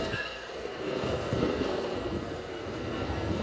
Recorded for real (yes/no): no